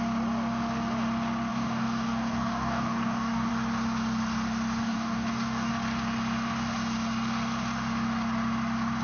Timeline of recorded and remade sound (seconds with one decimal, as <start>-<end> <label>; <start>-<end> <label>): 0.0-1.5 recorded; 1.5-3.5 remade; 3.5-4.8 recorded; 4.8-5.7 remade; 5.7-9.0 recorded